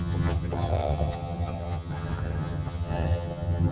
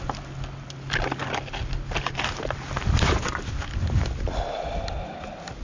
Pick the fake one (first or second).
first